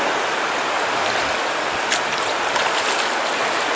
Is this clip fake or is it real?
real